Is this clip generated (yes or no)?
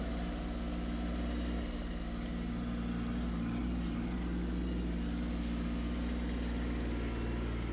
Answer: no